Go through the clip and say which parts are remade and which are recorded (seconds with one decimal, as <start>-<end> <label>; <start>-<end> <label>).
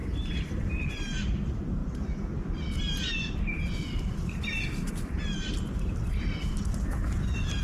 0.0-0.7 remade; 0.7-7.6 recorded